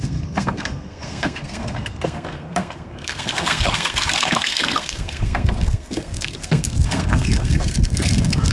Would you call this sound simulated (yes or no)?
yes